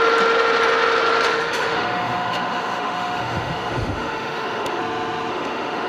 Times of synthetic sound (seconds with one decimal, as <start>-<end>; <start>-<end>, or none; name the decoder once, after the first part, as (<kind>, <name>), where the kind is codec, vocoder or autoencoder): 1.3-4.8 (autoencoder, DAC-VAE); 5.3-5.9